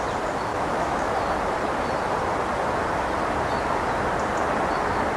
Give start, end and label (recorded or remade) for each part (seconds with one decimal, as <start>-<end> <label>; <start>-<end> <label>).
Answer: 0.0-0.5 recorded; 0.5-1.1 remade; 1.1-5.2 recorded